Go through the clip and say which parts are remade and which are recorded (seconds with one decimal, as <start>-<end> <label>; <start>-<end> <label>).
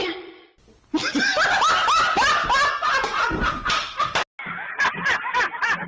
0.0-5.9 recorded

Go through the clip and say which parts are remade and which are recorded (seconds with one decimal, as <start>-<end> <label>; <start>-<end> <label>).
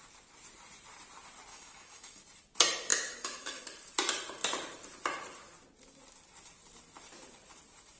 0.0-1.5 recorded; 1.5-2.2 remade; 2.2-2.9 recorded; 2.9-3.6 remade; 3.6-8.0 recorded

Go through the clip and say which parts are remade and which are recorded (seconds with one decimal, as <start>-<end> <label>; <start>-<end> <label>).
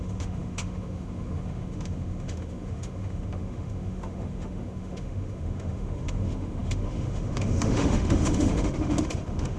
0.0-9.6 remade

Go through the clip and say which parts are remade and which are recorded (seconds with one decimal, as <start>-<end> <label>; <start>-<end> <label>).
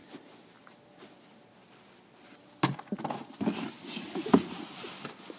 0.0-5.4 recorded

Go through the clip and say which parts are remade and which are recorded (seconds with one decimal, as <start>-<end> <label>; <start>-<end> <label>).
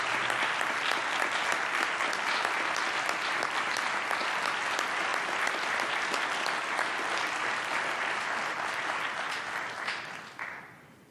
0.0-11.1 recorded